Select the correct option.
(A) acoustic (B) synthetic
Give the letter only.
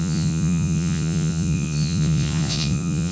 B